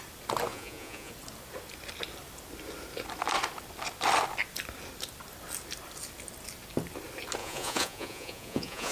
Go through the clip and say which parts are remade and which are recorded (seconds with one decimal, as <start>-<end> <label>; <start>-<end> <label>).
0.0-0.5 recorded; 0.5-1.1 remade; 1.1-7.4 recorded; 7.4-8.9 remade